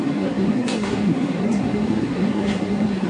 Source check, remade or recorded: remade